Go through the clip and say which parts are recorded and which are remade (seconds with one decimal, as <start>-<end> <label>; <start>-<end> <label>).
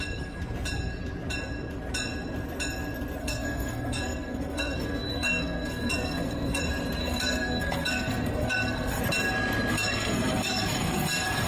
0.0-3.2 recorded; 3.2-6.6 remade; 6.6-7.0 recorded; 7.0-9.0 remade; 9.0-9.7 recorded; 9.7-11.5 remade